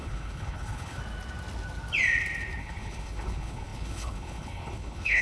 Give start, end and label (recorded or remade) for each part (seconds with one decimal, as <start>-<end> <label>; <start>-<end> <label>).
0.0-1.0 remade; 1.0-2.6 recorded; 2.6-5.2 remade